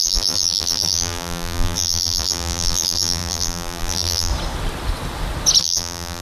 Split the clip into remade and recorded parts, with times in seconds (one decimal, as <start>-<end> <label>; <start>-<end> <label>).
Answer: 0.0-4.3 remade; 4.3-5.6 recorded; 5.6-6.2 remade